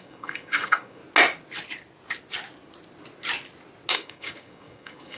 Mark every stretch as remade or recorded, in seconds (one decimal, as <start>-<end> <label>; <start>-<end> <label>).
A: 0.0-1.0 remade; 1.0-3.9 recorded; 3.9-5.2 remade